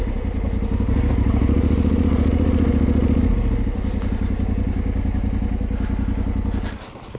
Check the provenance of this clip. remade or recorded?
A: recorded